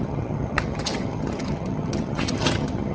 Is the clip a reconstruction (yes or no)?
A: yes